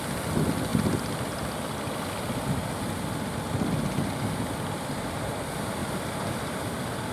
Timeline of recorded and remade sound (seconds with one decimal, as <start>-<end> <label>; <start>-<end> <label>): 0.0-0.7 remade; 0.7-4.7 recorded; 4.7-7.1 remade